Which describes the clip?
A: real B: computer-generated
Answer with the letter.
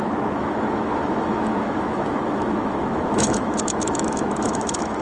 B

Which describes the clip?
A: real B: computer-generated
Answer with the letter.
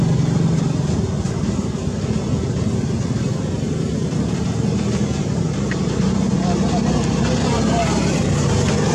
A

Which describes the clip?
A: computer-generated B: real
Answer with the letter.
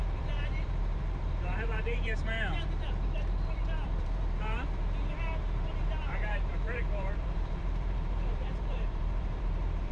A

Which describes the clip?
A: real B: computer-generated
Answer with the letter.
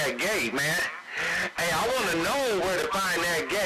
A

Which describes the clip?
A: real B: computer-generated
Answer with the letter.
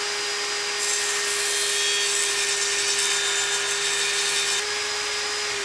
A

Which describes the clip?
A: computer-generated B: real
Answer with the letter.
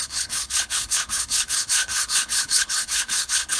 A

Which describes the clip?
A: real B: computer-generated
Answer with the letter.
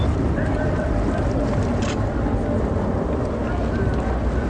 A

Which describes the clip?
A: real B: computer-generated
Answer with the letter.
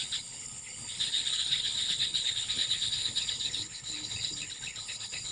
B